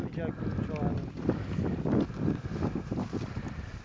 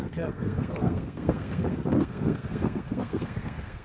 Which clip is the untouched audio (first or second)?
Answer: first